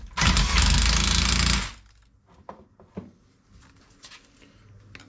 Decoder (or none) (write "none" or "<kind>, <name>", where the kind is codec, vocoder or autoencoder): none